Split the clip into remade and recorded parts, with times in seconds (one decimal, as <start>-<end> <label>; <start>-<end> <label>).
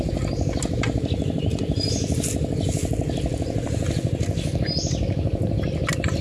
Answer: 0.0-6.2 recorded